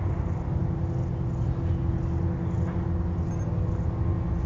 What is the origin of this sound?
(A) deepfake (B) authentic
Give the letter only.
B